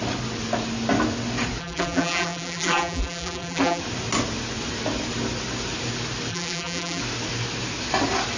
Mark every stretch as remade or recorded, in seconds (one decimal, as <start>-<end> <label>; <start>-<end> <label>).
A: 0.0-1.6 recorded; 1.6-3.8 remade; 3.8-6.3 recorded; 6.3-7.0 remade; 7.0-8.4 recorded